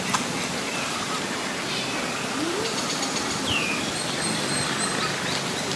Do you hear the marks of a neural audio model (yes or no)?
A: no